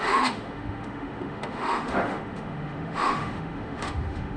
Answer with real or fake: fake